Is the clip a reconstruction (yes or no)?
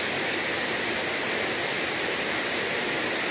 no